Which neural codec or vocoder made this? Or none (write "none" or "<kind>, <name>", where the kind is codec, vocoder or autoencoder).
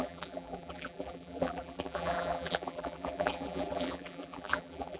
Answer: vocoder, BigVGAN v2